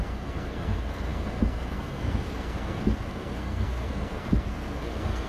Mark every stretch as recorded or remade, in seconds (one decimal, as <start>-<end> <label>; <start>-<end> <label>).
0.0-5.3 remade